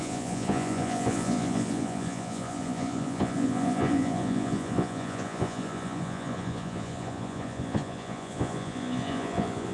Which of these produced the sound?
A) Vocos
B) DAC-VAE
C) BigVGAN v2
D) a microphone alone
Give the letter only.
A